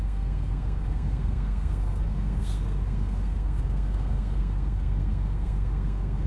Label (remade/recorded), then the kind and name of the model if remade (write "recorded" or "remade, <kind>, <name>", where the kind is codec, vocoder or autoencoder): remade, codec, SNAC